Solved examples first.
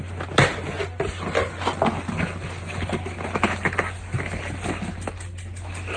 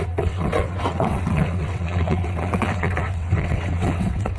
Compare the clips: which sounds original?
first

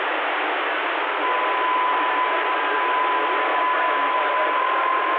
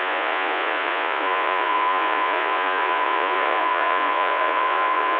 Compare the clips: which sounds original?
first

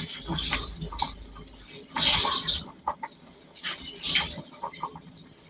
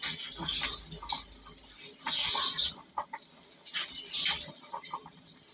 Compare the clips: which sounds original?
second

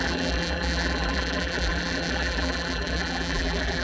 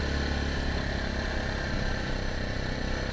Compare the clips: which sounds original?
second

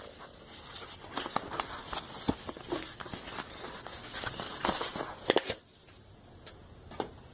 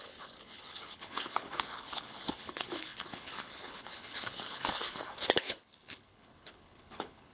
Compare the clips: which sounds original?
first